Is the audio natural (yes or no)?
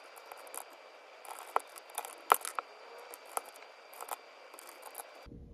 yes